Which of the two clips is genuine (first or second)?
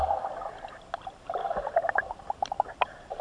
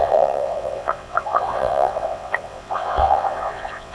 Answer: first